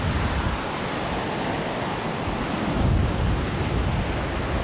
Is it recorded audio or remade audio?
recorded